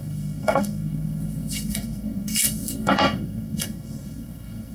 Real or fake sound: fake